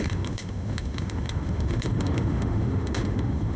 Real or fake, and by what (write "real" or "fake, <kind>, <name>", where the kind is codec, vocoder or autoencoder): fake, autoencoder, DAC-VAE